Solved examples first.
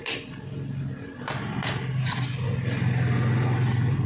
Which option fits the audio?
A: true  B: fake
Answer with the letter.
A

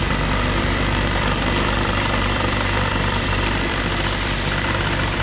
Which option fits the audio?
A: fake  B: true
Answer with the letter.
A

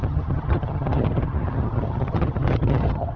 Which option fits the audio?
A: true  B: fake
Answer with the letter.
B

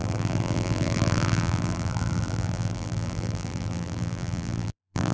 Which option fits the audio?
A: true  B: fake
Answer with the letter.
B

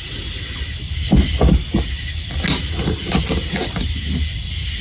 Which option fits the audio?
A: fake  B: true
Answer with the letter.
B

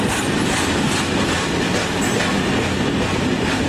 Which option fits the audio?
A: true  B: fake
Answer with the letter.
A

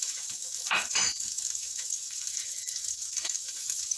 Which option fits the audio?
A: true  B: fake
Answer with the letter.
B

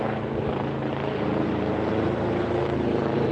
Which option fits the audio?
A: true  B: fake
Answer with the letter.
A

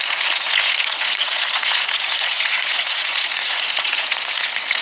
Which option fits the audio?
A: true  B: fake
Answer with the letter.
B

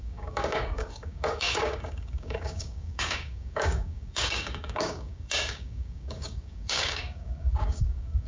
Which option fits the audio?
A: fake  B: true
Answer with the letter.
A